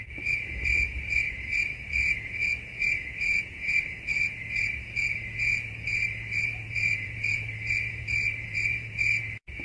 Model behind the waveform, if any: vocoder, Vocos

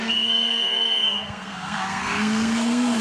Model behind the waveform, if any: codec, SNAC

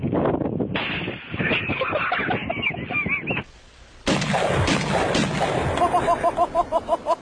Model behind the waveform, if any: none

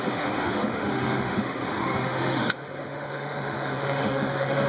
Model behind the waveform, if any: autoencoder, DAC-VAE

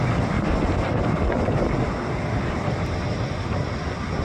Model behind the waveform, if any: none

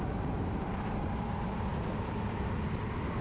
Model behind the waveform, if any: none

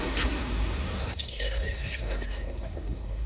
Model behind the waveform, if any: codec, SNAC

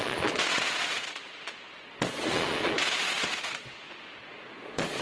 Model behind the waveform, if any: vocoder, Vocos